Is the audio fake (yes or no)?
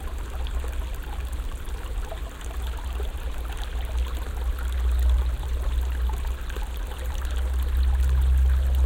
no